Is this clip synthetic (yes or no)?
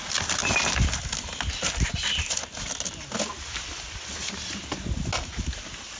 no